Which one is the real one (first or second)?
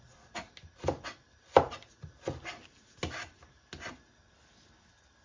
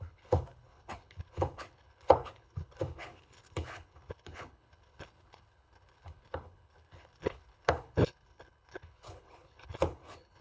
first